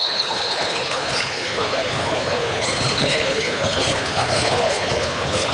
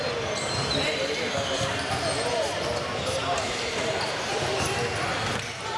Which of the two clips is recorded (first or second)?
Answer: second